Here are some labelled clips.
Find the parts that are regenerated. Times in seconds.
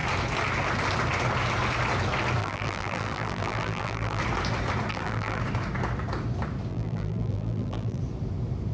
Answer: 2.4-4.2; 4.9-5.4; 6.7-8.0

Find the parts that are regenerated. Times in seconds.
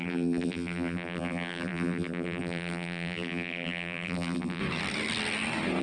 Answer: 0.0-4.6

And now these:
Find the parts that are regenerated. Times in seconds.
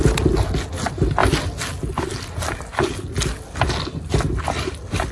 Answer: none